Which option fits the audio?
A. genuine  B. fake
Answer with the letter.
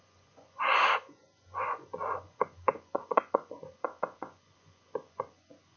B